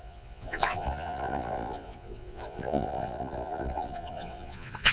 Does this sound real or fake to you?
fake